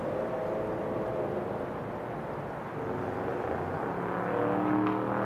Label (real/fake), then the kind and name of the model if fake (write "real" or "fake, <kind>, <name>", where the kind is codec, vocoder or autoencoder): real